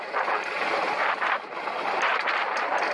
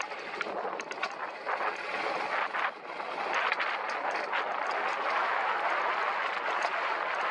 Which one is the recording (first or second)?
second